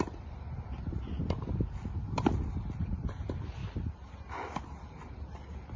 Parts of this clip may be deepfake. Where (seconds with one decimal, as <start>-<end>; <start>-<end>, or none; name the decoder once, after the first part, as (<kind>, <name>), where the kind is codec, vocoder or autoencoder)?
0.0-1.2 (vocoder, BigVGAN v2); 2.8-5.8